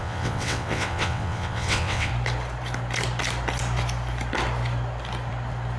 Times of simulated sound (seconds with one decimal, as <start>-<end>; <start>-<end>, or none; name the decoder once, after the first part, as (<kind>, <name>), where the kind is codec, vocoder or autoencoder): 0.0-2.1 (vocoder, WaveNeXt)